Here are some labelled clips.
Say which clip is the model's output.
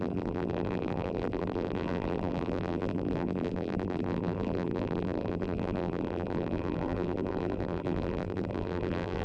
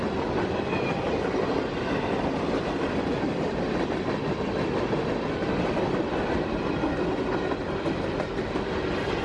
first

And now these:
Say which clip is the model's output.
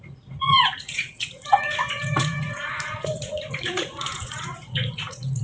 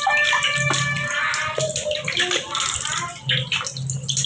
first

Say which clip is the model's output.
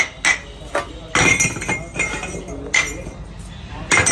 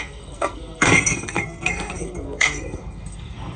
second